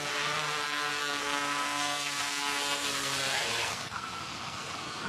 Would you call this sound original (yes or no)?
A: no